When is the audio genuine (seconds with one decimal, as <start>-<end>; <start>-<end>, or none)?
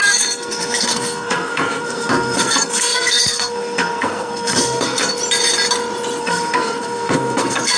5.2-6.2